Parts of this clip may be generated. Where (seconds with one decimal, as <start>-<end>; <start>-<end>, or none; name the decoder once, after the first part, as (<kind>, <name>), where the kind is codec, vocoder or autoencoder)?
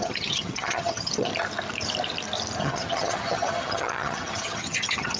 0.0-1.3 (vocoder, HiFi-GAN); 2.6-5.2